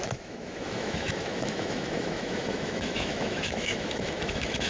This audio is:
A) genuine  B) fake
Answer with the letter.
B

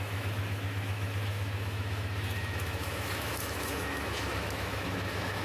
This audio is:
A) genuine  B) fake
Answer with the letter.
B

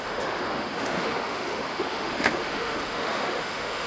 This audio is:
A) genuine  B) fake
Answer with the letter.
B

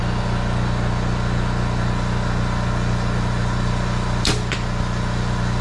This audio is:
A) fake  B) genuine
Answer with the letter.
B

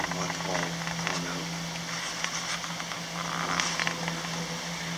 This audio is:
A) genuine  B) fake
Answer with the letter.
A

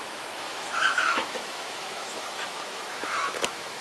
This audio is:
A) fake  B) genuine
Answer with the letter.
A